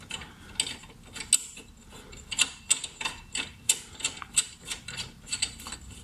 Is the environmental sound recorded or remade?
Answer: recorded